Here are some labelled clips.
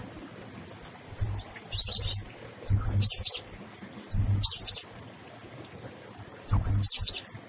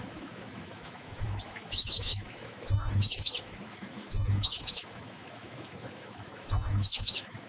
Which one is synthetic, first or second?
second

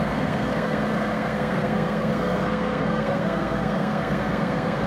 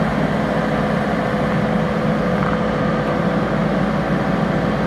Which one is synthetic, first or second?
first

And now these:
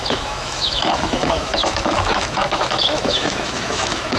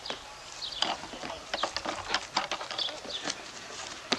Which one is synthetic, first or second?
first